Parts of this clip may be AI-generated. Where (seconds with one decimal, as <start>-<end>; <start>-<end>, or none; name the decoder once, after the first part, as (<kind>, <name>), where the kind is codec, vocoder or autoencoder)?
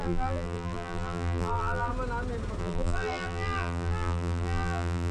0.0-1.9 (vocoder, BigVGAN v2); 2.6-5.1